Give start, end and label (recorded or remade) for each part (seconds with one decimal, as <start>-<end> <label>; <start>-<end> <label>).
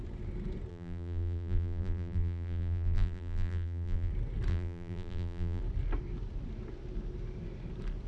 0.0-0.7 recorded; 0.7-4.1 remade; 4.1-4.5 recorded; 4.5-5.6 remade; 5.6-8.1 recorded